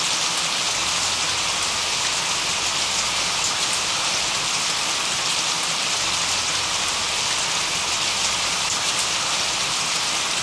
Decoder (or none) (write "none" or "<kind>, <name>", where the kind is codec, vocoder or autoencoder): none